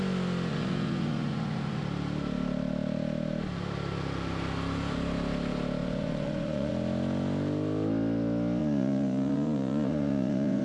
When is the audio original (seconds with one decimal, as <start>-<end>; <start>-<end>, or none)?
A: 0.0-0.5; 1.8-5.8; 6.7-8.6